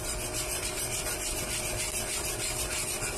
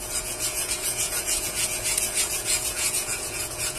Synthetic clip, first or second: second